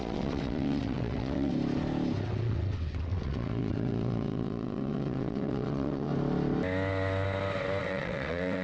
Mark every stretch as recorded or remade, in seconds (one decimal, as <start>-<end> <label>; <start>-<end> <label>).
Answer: 0.0-1.5 remade; 1.5-2.2 recorded; 2.2-6.1 remade; 6.1-7.8 recorded; 7.8-8.6 remade